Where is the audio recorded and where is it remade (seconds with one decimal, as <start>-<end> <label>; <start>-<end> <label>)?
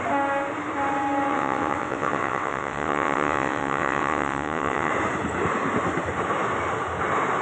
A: 0.0-1.3 recorded; 1.3-4.9 remade; 4.9-7.4 recorded